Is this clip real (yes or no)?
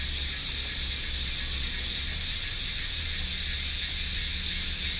yes